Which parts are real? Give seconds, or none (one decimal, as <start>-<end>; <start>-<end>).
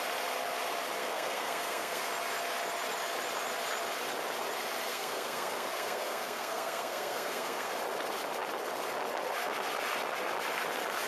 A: 0.0-1.0; 2.0-4.9; 7.7-11.1